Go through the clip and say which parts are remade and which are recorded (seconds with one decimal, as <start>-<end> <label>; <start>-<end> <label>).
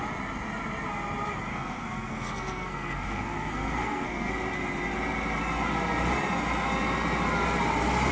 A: 0.0-1.5 recorded; 1.5-4.3 remade; 4.3-8.1 recorded